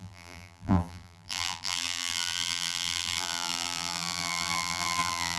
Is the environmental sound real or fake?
fake